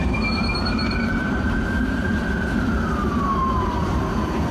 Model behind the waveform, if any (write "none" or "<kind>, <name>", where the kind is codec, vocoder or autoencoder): vocoder, BigVGAN v2